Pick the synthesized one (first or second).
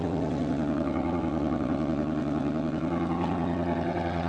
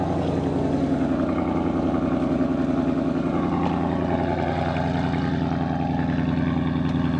first